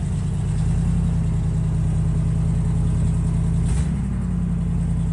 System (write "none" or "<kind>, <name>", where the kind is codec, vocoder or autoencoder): none